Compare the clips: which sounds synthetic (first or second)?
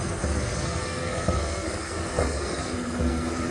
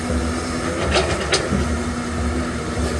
first